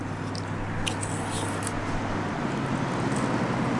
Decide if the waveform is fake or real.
real